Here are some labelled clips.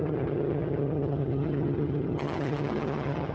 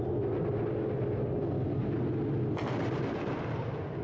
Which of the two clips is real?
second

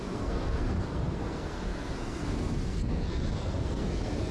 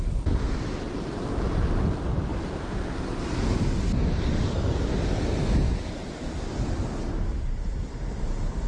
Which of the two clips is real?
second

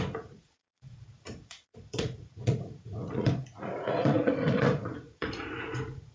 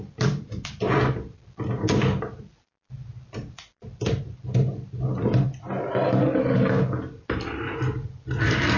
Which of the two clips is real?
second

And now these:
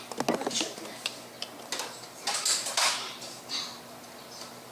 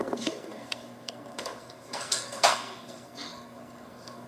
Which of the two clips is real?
first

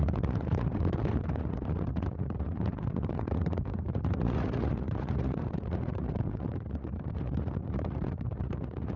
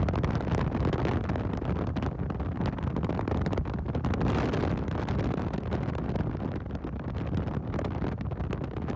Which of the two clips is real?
second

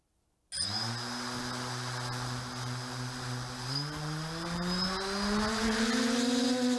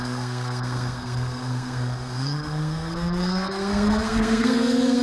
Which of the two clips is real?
first